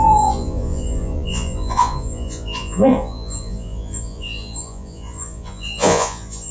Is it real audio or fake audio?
fake